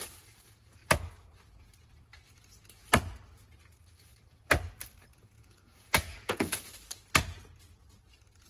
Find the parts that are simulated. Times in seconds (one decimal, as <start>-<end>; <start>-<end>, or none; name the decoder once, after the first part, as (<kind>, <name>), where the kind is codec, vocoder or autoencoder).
5.1-6.7 (vocoder, Vocos)